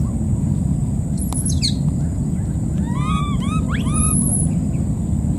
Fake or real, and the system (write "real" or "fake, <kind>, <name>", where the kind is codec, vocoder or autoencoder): real